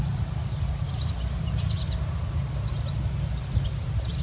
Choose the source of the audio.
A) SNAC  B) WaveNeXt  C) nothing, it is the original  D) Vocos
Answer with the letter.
C